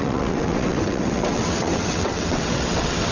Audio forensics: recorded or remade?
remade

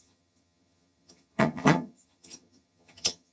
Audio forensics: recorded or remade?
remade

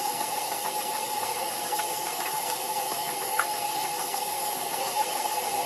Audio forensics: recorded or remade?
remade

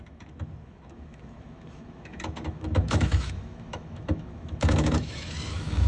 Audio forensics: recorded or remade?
remade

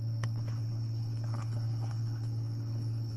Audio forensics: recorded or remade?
remade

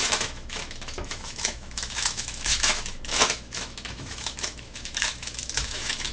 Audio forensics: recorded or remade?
remade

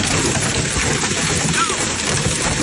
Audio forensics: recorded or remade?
recorded